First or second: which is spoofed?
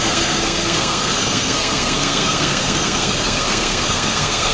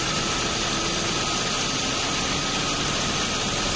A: first